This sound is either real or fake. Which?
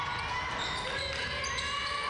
real